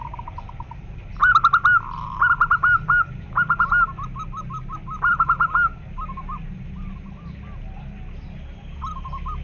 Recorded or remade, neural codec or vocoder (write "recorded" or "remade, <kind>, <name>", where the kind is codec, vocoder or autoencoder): recorded